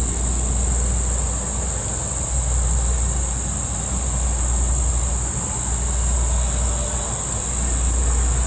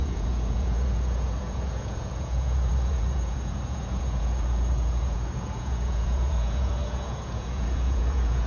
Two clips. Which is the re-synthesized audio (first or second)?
second